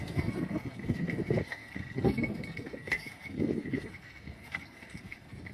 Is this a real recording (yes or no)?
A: no